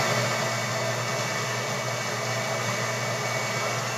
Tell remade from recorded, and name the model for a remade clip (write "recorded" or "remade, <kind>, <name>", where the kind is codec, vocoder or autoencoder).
recorded